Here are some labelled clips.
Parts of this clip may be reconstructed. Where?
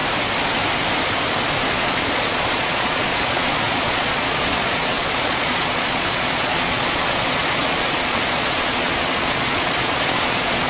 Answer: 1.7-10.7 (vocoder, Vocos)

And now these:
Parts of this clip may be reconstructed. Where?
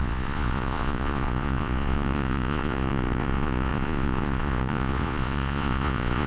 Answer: 0.0-6.3 (vocoder, Vocos)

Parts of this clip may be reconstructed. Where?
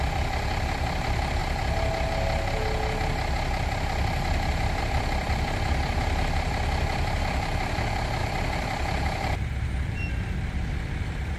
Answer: 0.0-1.4 (vocoder, BigVGAN v2); 4.8-11.4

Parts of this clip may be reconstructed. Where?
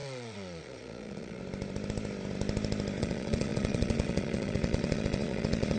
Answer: 0.0-1.4 (vocoder, Vocos); 3.0-5.8